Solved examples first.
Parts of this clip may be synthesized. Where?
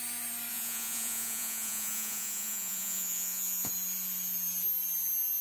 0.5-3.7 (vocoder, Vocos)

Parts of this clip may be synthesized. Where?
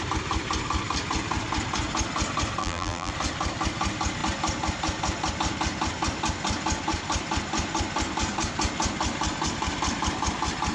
2.6-3.1 (vocoder, BigVGAN v2)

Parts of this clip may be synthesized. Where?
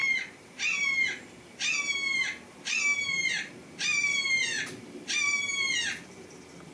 none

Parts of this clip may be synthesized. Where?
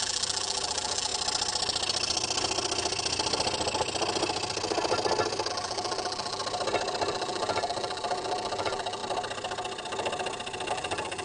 0.0-1.1 (vocoder, BigVGAN v2); 5.5-6.4; 7.1-9.0; 10.7-11.2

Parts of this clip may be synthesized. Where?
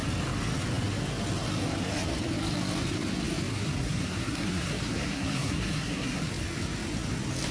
3.5-6.3 (codec, SNAC)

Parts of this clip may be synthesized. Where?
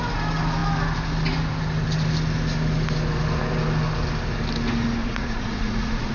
5.0-6.1 (vocoder, Vocos)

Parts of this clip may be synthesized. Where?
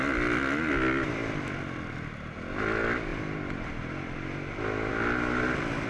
none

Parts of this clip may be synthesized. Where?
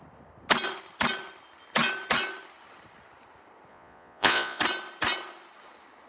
3.7-4.6 (vocoder, Vocos)